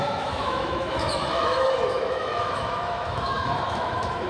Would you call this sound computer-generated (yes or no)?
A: yes